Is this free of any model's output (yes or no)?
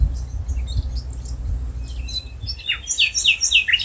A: yes